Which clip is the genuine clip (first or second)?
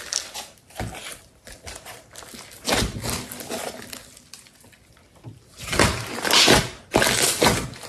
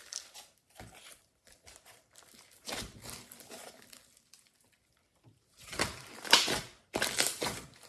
first